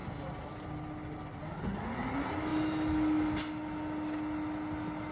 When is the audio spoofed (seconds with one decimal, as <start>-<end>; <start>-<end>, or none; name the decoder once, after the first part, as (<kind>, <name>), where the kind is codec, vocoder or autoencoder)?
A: none